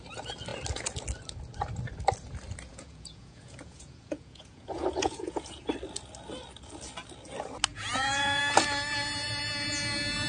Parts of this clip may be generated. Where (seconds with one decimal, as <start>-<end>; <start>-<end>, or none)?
2.7-5.7; 7.7-8.4